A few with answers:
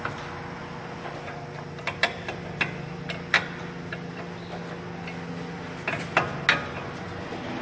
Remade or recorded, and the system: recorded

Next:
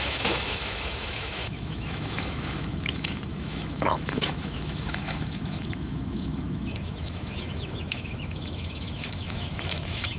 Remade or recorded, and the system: remade, autoencoder, DAC-VAE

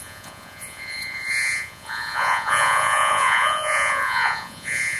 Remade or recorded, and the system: remade, vocoder, Vocos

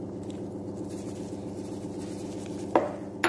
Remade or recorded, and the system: recorded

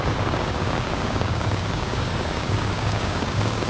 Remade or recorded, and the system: remade, codec, DAC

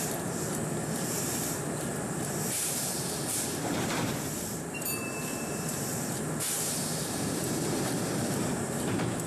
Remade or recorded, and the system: remade, vocoder, BigVGAN v2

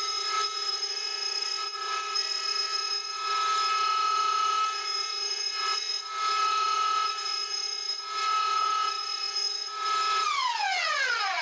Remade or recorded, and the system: remade, vocoder, WaveNeXt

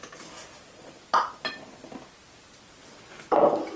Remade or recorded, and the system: recorded